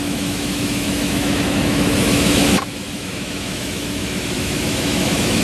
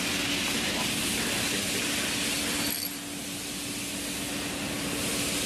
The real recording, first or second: second